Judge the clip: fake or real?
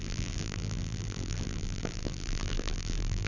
fake